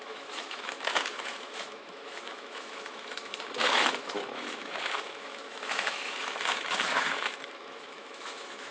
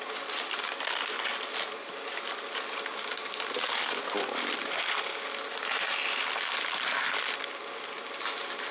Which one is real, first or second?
second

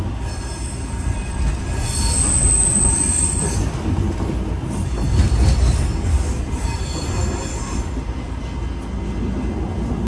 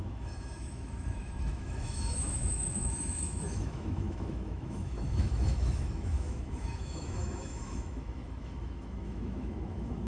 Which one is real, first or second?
first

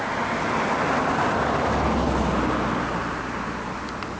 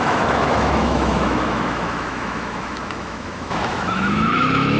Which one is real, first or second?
first